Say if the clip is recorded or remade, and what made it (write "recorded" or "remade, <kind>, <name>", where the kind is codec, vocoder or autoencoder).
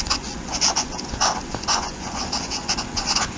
remade, vocoder, Vocos